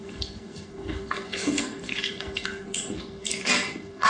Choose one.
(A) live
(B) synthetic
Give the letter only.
B